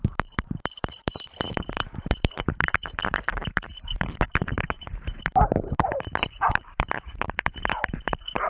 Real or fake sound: fake